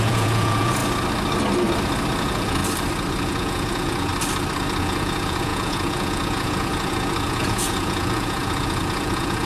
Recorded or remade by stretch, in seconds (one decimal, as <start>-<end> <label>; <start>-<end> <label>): 0.0-0.8 remade; 0.8-2.2 recorded; 2.2-2.6 remade; 2.6-3.2 recorded; 3.2-4.1 remade; 4.1-4.8 recorded; 4.8-9.5 remade

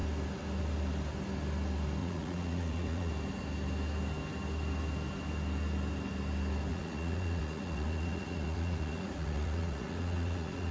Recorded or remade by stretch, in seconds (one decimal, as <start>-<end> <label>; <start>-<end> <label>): 0.0-2.0 recorded; 2.0-3.1 remade; 3.1-6.7 recorded; 6.7-10.7 remade

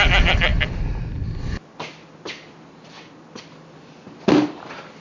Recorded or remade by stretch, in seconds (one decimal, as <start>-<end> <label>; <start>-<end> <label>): 0.0-5.0 recorded

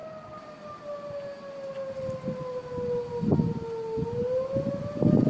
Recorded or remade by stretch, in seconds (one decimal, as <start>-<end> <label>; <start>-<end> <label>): 0.0-5.3 recorded

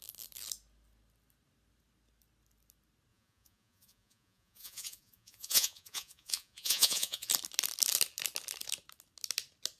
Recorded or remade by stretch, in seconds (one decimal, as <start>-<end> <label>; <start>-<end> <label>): 0.0-3.1 recorded; 3.1-7.3 remade; 7.3-9.8 recorded

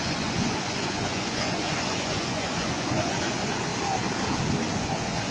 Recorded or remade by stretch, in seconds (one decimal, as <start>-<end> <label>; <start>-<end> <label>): 0.0-3.7 remade; 3.7-4.7 recorded; 4.7-5.3 remade

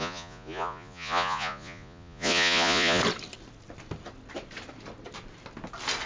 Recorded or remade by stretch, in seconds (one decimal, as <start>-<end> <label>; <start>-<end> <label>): 0.0-3.0 remade; 3.0-6.1 recorded

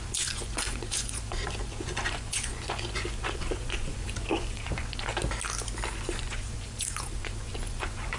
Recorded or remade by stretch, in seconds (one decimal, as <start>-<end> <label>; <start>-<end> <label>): 0.0-5.1 remade; 5.1-5.9 recorded; 5.9-8.2 remade